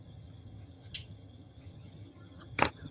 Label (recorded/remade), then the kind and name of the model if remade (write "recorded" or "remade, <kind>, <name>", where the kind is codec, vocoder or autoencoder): remade, vocoder, HiFi-GAN